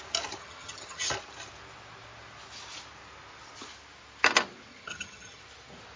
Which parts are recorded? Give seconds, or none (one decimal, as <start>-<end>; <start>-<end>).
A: 0.0-0.4; 1.1-4.7; 5.4-6.0